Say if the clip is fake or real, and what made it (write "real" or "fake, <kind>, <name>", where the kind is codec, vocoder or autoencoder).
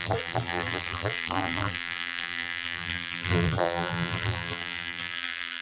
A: fake, vocoder, BigVGAN v2